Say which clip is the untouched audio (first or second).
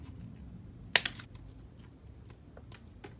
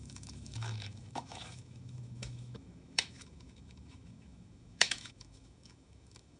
first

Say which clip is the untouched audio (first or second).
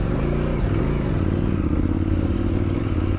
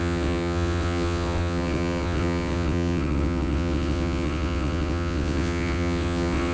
first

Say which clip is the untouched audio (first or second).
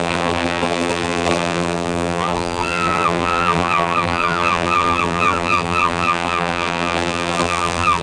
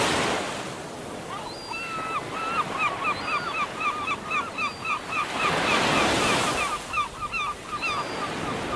second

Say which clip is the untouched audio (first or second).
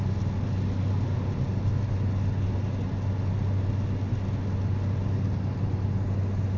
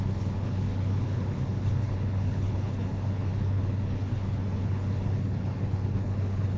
first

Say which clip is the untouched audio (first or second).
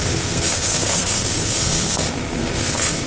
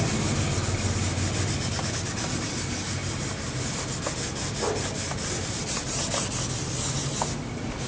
second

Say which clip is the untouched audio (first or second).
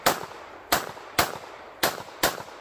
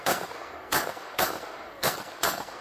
first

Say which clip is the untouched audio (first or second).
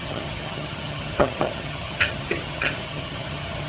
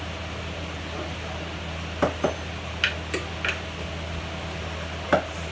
second